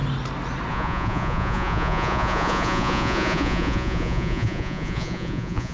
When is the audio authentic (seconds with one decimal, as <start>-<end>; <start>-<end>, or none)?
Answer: 0.0-0.7